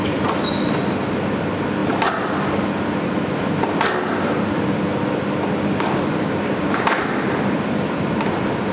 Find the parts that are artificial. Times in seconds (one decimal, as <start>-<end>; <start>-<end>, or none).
none